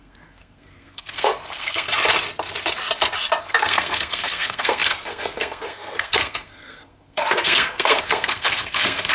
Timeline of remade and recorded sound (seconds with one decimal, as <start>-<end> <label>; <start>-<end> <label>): 0.0-1.9 remade; 1.9-3.4 recorded; 3.4-9.1 remade